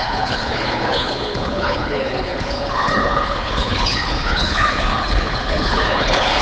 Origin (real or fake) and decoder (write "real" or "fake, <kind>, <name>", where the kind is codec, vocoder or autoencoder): fake, codec, HILCodec